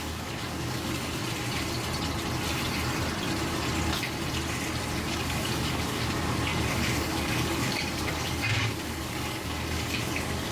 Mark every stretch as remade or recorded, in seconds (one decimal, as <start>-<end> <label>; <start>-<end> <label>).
0.0-1.2 remade; 1.2-4.9 recorded; 4.9-10.5 remade